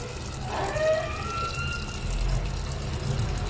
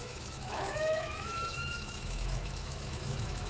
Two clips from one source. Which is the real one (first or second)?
first